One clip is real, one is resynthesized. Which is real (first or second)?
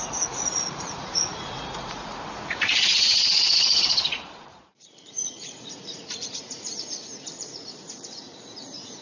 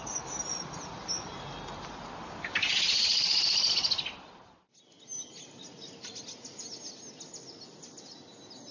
second